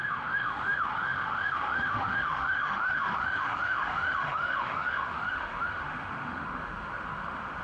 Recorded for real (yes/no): no